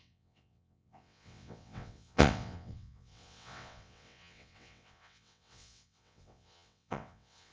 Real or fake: fake